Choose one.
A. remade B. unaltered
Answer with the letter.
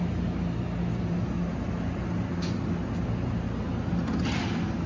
B